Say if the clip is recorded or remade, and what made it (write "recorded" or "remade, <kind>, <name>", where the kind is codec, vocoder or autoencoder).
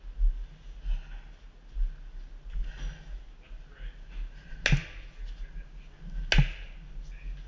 recorded